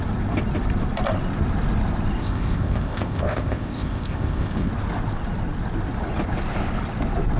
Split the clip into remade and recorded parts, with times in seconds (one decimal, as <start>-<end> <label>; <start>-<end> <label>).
0.0-2.2 recorded; 2.2-4.7 remade; 4.7-7.4 recorded